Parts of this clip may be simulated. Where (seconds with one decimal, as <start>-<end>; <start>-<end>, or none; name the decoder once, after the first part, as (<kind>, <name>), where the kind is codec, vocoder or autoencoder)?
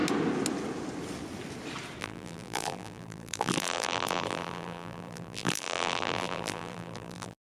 2.0-7.5 (vocoder, BigVGAN v2)